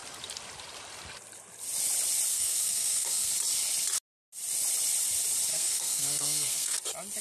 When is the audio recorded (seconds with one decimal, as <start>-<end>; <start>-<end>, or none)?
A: 0.0-2.3; 3.3-5.5; 6.8-7.2